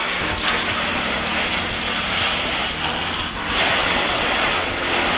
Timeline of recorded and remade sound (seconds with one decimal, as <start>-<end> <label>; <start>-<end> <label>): 0.0-3.8 recorded; 3.8-4.7 remade; 4.7-5.2 recorded